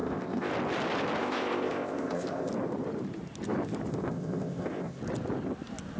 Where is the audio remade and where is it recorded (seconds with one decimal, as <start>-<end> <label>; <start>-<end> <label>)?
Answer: 0.0-0.5 remade; 0.5-1.2 recorded; 1.2-2.5 remade; 2.5-3.9 recorded; 3.9-5.0 remade; 5.0-6.0 recorded